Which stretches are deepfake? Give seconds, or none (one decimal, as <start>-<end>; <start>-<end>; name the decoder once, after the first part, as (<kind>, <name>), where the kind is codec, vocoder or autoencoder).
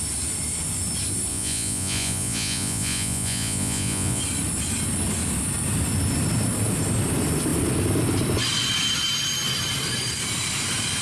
1.3-4.2 (vocoder, Vocos)